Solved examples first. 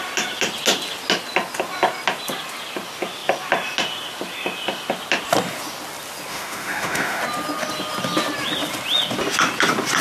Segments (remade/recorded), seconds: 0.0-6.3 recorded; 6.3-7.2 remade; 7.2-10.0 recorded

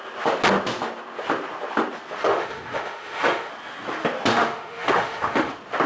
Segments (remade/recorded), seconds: 0.0-2.2 recorded; 2.2-3.5 remade; 3.5-4.3 recorded; 4.3-5.5 remade; 5.5-5.9 recorded

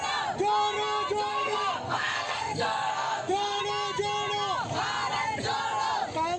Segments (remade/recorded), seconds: 0.0-1.3 recorded; 1.3-3.6 remade; 3.6-6.4 recorded